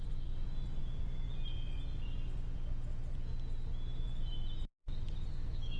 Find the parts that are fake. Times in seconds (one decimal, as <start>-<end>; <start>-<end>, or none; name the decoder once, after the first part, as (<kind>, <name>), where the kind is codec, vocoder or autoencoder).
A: 5.3-5.8 (autoencoder, DAC-VAE)